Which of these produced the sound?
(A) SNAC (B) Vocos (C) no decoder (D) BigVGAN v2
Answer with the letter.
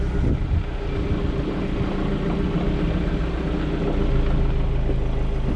C